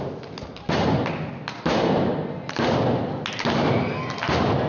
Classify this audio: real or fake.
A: real